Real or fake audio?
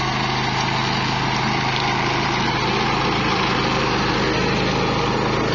real